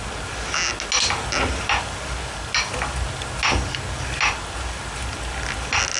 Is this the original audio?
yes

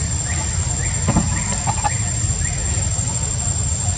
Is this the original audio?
yes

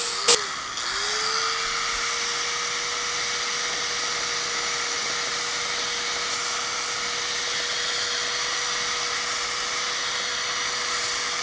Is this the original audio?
yes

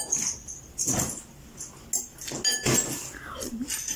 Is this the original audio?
yes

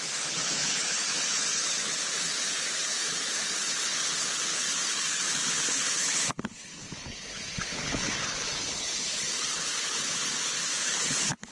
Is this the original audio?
no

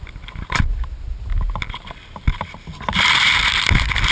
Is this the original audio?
yes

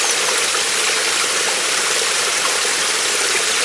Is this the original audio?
yes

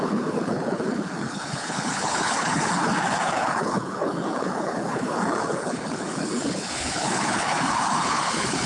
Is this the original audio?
no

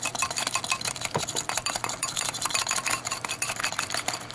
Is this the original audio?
no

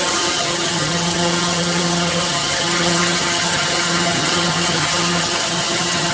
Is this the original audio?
no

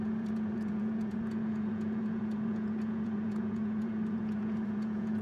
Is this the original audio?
no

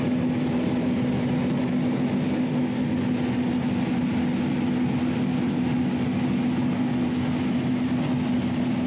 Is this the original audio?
yes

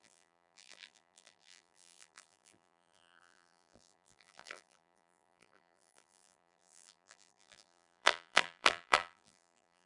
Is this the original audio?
no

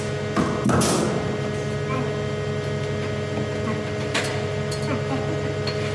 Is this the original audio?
yes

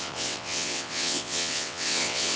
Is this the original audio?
no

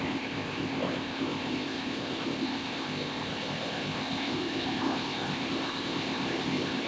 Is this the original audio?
no